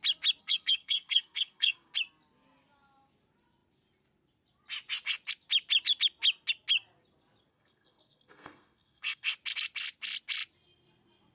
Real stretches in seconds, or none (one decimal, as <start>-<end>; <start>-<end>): 0.0-0.4; 1.9-7.5; 9.3-11.3